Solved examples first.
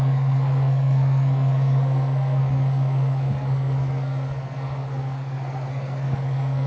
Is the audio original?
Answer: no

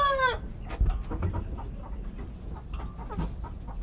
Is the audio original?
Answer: yes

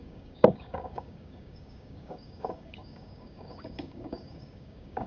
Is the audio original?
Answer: no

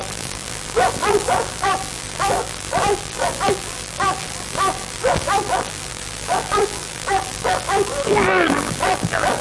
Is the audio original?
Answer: no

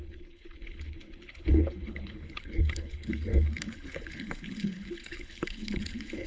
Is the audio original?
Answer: no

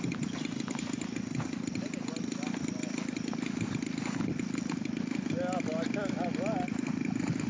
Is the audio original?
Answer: yes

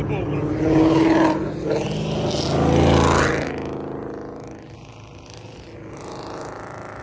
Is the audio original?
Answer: yes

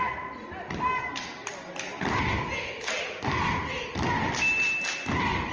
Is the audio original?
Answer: yes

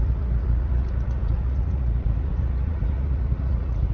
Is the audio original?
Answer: no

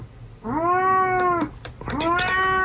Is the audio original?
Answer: yes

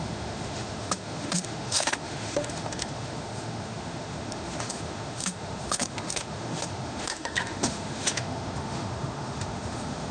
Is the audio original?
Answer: no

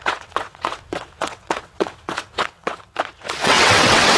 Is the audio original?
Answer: no